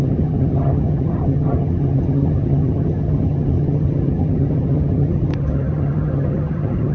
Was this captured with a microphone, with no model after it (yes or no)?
no